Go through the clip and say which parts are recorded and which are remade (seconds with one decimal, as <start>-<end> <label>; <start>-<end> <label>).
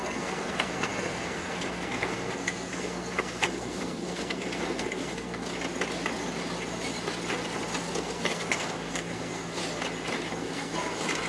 0.0-5.5 remade; 5.5-7.8 recorded; 7.8-9.6 remade; 9.6-10.3 recorded; 10.3-11.3 remade